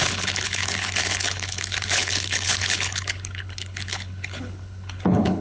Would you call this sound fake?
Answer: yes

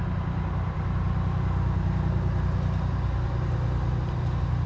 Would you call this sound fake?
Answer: no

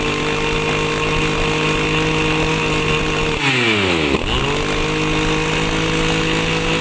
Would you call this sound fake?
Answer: no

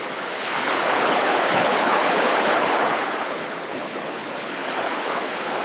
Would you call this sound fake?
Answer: yes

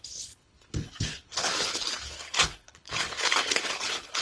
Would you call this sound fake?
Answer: yes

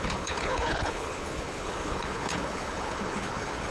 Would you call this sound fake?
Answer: yes